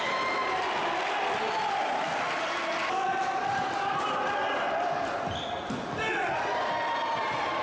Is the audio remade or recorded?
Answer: recorded